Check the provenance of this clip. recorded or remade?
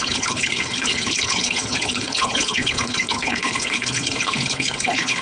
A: remade